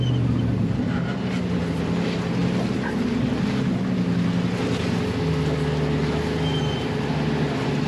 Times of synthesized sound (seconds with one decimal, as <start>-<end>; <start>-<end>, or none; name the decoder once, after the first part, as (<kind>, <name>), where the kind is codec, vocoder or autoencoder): none